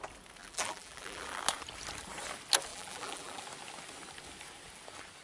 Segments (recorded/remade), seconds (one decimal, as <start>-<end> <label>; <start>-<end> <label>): 0.0-0.4 recorded; 0.4-1.4 remade; 1.4-2.7 recorded; 2.7-3.4 remade; 3.4-5.2 recorded